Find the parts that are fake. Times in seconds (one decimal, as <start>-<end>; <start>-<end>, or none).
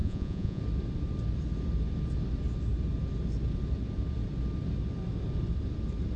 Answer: 0.0-0.6